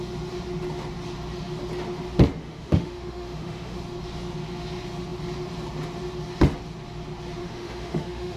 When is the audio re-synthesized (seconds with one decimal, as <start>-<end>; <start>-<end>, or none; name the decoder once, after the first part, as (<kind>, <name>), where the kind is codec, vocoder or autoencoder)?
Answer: 2.4-3.8 (autoencoder, DAC-VAE); 7.4-8.4